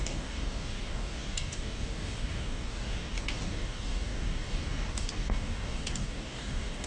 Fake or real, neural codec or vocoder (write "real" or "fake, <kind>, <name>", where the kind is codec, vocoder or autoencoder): fake, codec, DAC